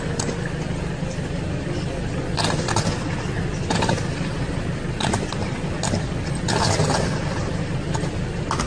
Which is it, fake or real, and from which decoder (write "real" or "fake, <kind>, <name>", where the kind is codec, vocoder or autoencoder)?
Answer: real